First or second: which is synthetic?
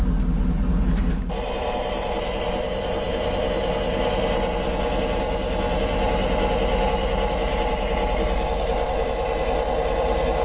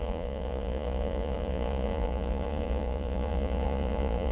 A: second